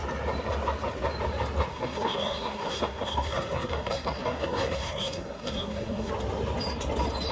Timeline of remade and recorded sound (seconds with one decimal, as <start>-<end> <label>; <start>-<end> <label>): 0.0-1.7 recorded; 1.7-6.1 remade; 6.1-7.3 recorded